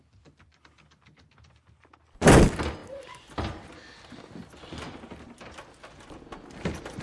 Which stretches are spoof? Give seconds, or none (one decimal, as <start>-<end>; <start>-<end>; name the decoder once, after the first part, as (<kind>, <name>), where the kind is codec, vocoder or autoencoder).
none